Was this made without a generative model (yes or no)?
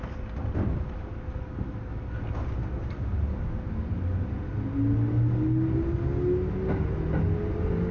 yes